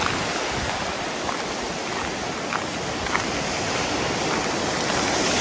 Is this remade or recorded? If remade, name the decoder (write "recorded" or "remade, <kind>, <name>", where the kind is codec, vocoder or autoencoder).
recorded